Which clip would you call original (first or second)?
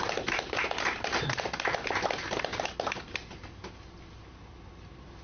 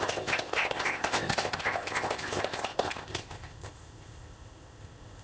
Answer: first